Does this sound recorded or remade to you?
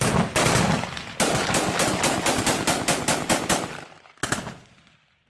recorded